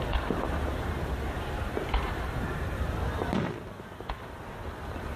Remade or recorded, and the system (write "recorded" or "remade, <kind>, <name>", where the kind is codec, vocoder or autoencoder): recorded